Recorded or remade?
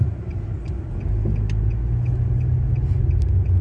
recorded